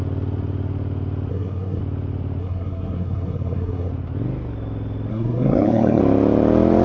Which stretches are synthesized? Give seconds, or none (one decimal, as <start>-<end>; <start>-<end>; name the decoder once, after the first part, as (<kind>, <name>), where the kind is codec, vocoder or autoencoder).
1.3-1.8 (codec, SNAC); 2.4-3.9; 5.1-6.0